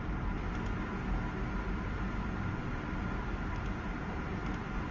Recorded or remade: recorded